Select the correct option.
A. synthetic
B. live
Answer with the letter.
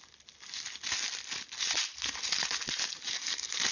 B